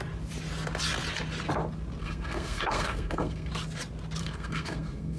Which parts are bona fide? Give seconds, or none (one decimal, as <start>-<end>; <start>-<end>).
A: 0.0-2.0; 3.5-4.2